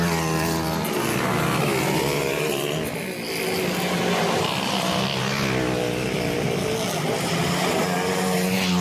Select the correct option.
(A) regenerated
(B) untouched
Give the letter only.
B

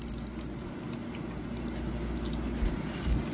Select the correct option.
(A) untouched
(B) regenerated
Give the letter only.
A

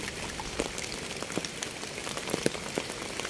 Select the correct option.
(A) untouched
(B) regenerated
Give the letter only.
A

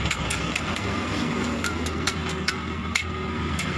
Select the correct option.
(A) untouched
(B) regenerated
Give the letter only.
B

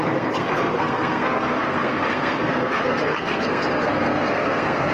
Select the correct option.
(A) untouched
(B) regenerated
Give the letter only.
B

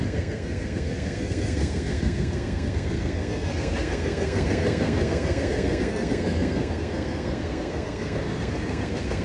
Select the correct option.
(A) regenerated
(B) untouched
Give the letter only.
A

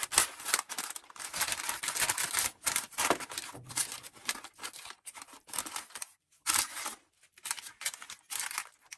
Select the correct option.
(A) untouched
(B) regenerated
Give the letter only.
A